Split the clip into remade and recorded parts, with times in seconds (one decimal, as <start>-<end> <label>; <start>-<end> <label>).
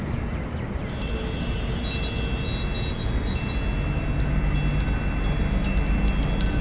0.0-6.6 recorded